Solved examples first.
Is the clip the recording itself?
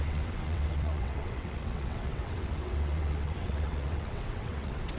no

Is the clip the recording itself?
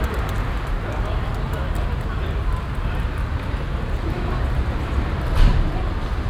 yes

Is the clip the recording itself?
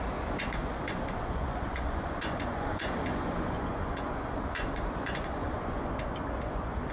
no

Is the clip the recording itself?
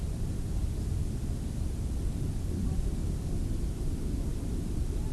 yes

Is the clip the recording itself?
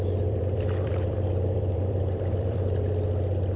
no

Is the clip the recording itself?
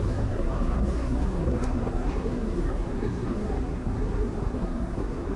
no